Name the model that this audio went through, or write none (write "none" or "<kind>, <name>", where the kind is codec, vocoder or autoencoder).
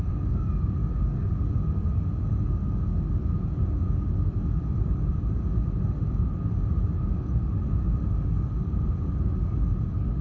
none